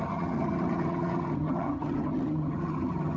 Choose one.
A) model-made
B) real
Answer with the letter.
A